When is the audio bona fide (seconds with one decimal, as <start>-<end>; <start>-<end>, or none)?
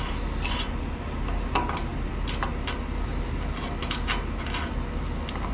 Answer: 0.0-5.5